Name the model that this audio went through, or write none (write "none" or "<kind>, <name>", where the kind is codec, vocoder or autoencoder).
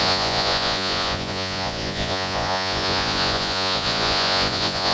vocoder, Vocos